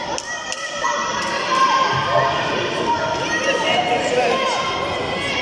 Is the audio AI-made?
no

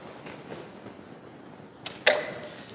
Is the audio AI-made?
no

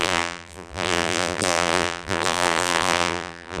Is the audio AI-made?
yes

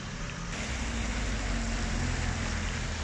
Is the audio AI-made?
no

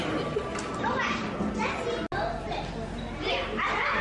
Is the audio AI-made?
no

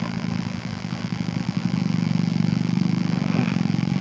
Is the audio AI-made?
yes